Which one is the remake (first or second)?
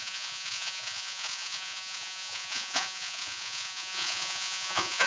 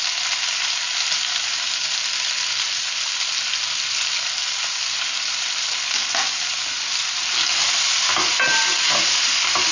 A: first